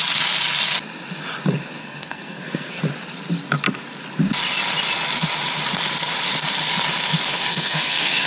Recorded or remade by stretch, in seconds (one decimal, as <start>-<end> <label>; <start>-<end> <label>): 0.0-1.8 recorded; 1.8-2.8 remade; 2.8-7.5 recorded; 7.5-8.3 remade